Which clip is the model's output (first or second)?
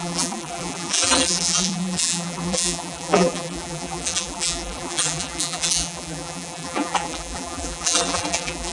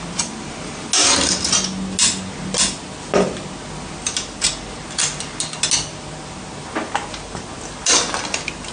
first